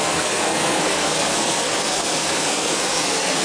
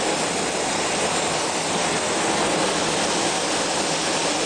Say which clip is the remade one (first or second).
first